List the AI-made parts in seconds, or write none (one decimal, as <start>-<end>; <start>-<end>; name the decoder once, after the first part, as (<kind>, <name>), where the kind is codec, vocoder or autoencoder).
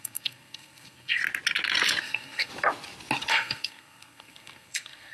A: 0.0-1.2 (codec, SNAC); 2.0-2.5; 3.3-5.1